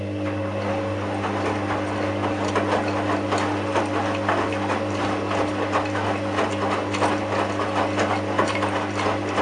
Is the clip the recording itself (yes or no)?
yes